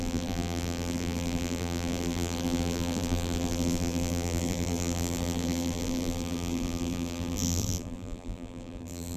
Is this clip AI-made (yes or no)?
yes